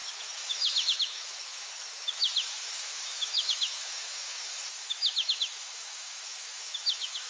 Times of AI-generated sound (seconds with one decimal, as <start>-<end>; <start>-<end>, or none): 0.0-7.3